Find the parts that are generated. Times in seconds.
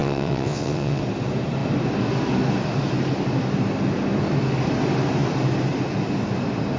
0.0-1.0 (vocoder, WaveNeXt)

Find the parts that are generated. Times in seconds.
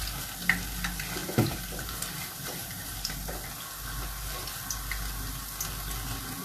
1.2-3.3 (vocoder, BigVGAN v2)